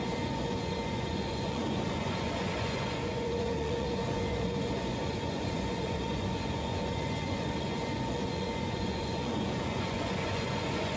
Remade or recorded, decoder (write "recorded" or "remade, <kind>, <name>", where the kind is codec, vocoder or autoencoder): remade, vocoder, Vocos